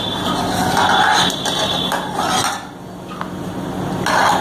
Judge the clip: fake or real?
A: real